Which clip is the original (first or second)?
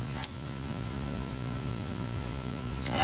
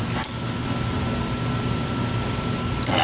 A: second